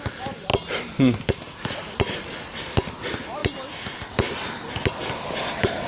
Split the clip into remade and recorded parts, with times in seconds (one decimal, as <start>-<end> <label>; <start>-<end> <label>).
0.0-5.9 recorded